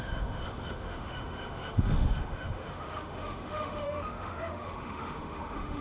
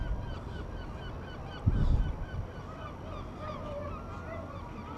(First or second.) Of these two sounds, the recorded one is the second